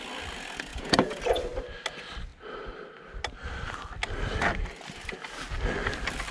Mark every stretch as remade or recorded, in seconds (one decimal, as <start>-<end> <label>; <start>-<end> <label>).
0.0-0.7 recorded; 0.7-1.2 remade; 1.2-6.3 recorded